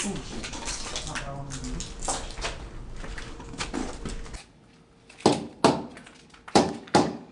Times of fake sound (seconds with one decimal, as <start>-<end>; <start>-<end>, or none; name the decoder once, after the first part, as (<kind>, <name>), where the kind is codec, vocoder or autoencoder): 0.0-0.9 (codec, DAC); 3.1-3.8; 6.5-7.3